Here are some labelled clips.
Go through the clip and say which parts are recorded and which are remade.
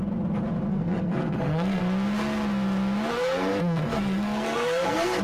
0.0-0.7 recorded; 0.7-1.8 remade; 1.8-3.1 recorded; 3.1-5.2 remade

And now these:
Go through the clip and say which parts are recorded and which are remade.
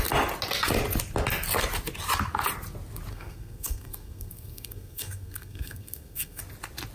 0.0-3.1 recorded; 3.1-6.4 remade; 6.4-6.9 recorded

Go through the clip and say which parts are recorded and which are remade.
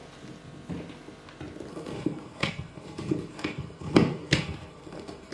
0.0-1.7 recorded; 1.7-5.3 remade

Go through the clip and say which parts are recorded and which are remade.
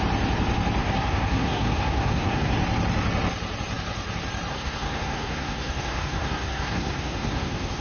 0.0-0.8 recorded; 0.8-2.5 remade; 2.5-4.5 recorded; 4.5-7.8 remade